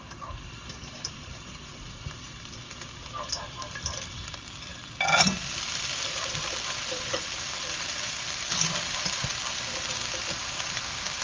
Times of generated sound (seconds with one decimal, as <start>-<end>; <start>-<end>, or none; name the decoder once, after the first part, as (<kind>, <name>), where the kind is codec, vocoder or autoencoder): 0.0-9.3 (vocoder, BigVGAN v2); 9.9-11.2